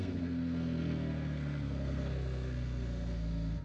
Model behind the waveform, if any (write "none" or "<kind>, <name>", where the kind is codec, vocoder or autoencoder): codec, SNAC